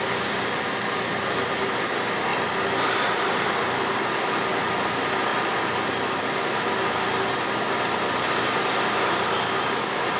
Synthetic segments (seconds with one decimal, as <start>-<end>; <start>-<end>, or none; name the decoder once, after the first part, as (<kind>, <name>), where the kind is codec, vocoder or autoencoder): none